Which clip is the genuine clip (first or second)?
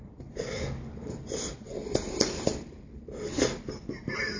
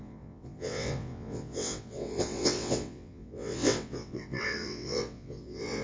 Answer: first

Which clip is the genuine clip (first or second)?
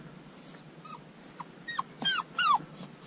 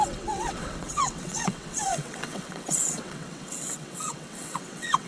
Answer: first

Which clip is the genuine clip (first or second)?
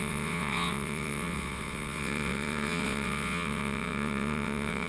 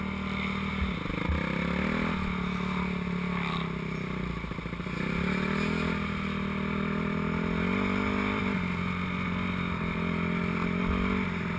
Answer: second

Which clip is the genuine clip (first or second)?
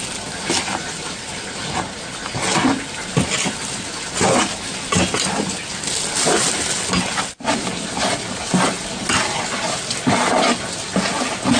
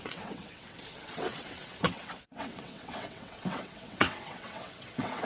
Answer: first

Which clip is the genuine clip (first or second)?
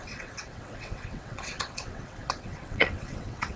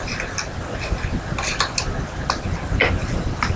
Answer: second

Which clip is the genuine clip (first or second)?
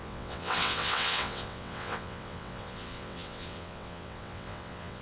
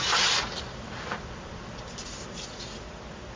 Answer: second